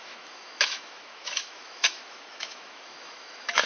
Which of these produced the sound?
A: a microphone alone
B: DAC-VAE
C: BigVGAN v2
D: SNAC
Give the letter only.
B